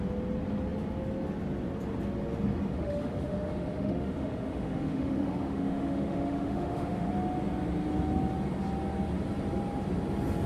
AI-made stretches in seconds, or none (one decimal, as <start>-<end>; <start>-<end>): 2.7-7.1